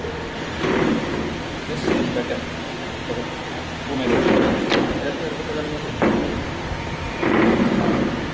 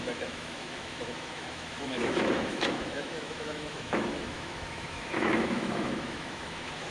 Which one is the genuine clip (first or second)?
first